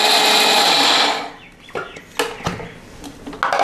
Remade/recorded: recorded